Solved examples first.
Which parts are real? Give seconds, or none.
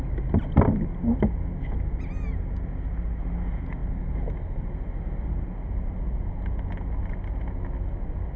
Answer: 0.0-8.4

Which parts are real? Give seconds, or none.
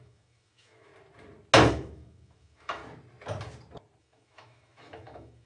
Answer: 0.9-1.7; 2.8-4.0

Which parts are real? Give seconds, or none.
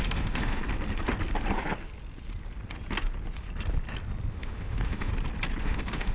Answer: 0.6-4.3; 5.1-5.6